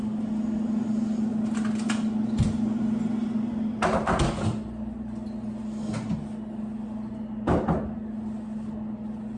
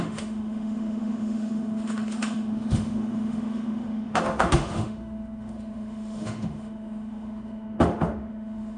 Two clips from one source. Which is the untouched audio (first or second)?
first